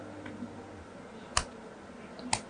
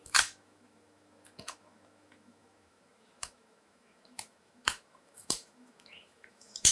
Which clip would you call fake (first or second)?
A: second